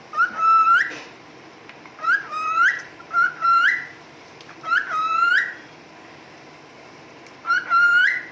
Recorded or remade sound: remade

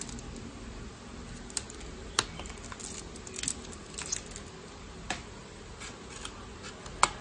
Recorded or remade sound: recorded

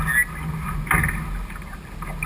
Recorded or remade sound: recorded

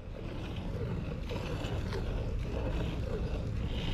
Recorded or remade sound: recorded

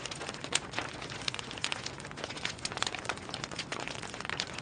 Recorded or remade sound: remade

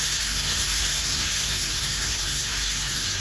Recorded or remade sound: remade